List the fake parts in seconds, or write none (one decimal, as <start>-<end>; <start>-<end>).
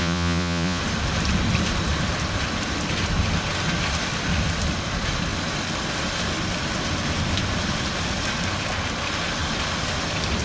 0.0-0.8